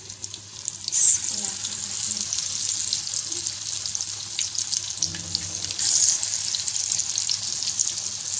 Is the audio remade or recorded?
recorded